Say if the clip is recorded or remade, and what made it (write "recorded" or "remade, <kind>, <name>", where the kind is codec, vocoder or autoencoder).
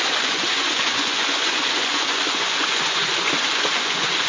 remade, vocoder, Vocos